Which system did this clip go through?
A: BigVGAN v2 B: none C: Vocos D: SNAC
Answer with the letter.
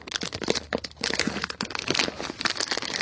B